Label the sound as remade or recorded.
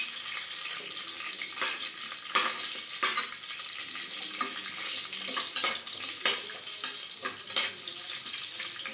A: recorded